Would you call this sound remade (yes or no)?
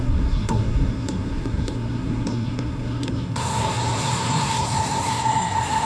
yes